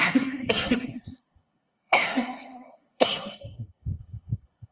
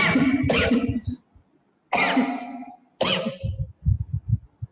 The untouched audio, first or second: second